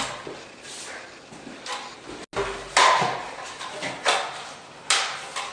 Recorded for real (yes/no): yes